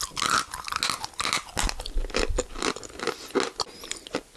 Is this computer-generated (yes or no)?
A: no